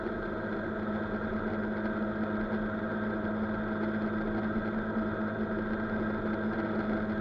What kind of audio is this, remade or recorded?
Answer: recorded